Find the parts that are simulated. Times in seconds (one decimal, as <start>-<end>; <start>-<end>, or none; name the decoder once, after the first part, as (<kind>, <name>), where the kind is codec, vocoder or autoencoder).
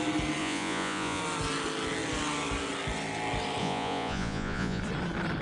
0.4-1.2 (vocoder, Vocos); 3.6-4.8